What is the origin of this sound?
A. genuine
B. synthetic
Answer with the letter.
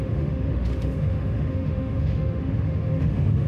B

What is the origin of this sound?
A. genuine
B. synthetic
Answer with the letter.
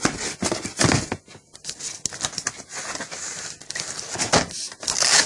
A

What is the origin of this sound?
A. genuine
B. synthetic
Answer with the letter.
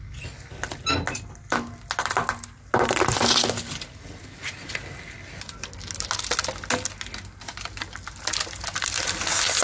A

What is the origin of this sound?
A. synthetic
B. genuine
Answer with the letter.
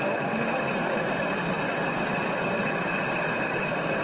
B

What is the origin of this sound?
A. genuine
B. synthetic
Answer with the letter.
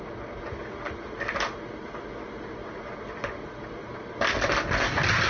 A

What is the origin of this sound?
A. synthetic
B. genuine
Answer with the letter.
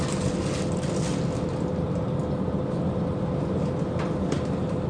B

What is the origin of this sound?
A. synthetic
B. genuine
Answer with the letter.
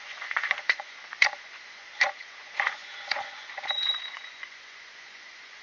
A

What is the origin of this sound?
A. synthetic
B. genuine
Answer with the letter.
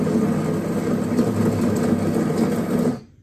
B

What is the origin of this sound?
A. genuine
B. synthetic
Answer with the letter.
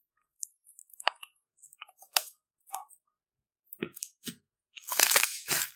B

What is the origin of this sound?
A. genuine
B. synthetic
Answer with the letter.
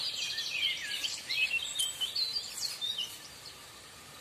B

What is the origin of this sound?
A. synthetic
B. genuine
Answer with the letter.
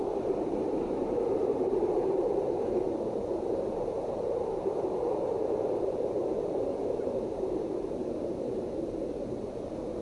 A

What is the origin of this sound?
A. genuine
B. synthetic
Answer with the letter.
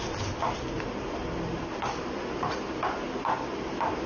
A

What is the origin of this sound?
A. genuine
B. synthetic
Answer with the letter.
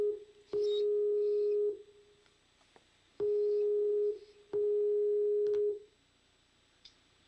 A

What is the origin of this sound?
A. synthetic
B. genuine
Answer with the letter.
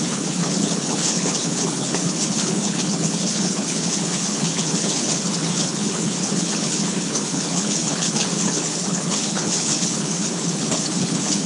A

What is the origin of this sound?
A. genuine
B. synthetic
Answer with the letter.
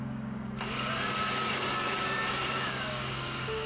B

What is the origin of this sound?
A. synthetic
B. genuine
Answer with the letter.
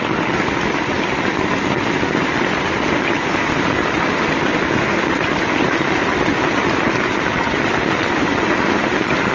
A